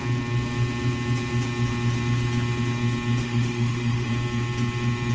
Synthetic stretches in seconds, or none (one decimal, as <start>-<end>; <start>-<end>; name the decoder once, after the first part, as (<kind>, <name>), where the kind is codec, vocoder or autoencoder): 3.2-4.1 (autoencoder, DAC-VAE)